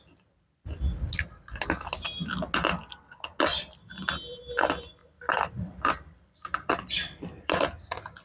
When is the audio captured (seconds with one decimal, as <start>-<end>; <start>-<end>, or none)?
0.0-3.5; 4.1-5.0; 7.6-8.2